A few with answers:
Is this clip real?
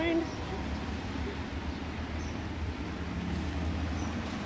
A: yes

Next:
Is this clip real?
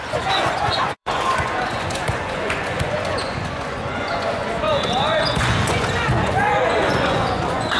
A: no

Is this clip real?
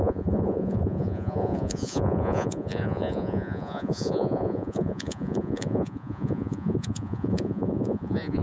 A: no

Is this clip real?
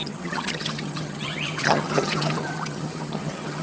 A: no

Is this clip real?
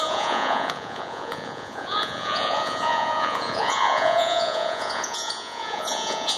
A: no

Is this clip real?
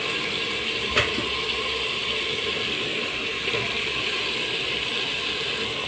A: yes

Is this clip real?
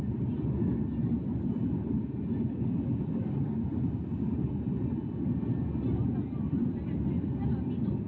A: yes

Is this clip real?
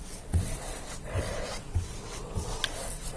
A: no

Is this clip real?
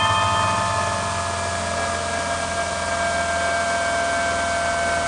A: yes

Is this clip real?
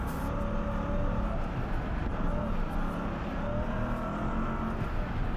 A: yes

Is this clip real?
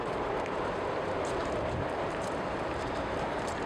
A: no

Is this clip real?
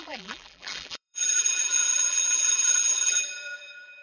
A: no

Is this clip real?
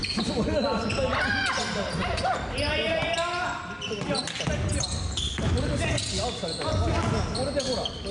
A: yes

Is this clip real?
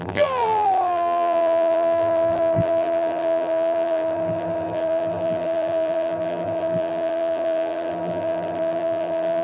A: no